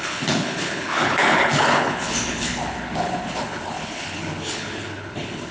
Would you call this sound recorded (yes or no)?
no